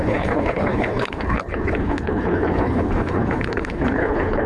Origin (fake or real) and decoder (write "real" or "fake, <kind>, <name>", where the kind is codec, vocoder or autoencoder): fake, codec, HILCodec